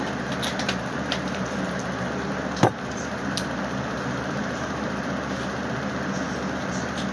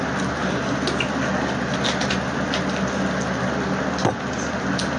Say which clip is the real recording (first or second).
second